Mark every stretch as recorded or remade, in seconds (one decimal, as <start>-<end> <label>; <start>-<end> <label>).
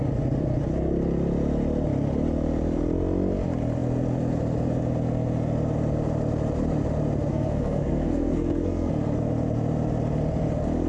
0.0-7.3 recorded; 7.3-8.9 remade; 8.9-10.9 recorded